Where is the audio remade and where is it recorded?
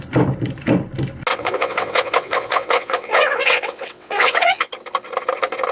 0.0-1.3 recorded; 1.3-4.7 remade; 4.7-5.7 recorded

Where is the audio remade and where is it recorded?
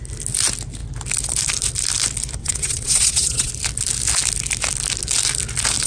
0.0-2.4 recorded; 2.4-3.5 remade; 3.5-5.9 recorded